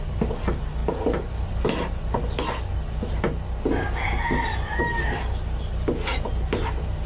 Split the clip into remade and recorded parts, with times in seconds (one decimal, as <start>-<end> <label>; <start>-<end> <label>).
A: 0.0-7.1 recorded